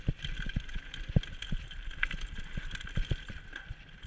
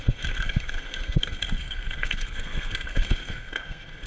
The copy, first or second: second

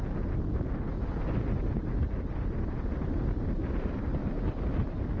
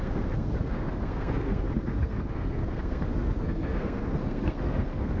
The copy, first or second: second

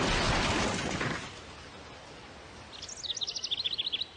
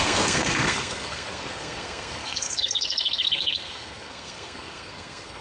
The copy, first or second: second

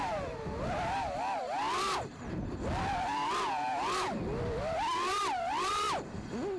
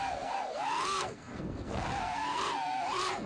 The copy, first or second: second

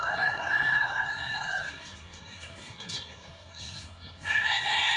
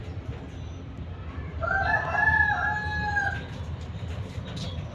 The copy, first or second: first